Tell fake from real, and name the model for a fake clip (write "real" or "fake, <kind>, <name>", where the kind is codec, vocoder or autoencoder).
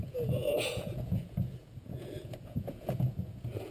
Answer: fake, vocoder, Vocos